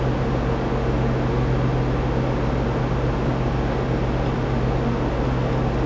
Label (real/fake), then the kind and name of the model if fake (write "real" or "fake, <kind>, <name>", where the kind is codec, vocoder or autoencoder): real